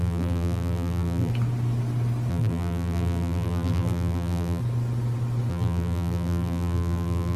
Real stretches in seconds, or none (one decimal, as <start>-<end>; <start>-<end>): 1.3-2.3; 4.6-5.5